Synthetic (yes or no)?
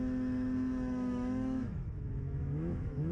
yes